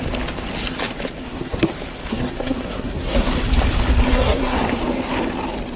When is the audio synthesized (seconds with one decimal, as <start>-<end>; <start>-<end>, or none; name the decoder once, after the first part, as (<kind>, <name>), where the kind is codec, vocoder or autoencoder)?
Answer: 1.2-1.7 (codec, SNAC); 2.1-3.3; 4.1-4.8